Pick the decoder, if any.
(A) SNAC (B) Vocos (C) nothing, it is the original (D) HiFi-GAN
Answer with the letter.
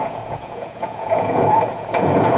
B